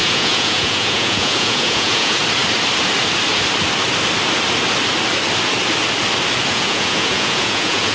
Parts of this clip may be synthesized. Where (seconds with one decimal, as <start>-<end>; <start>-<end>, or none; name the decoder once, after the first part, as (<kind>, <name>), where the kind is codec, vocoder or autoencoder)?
0.0-2.2 (vocoder, Vocos); 6.5-7.9